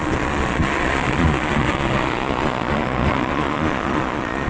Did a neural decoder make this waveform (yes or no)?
yes